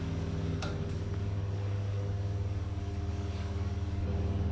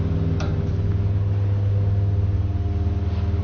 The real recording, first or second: second